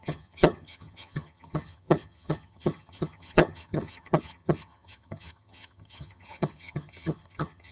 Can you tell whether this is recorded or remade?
remade